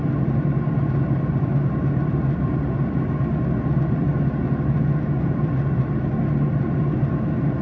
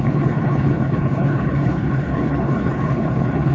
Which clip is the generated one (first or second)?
second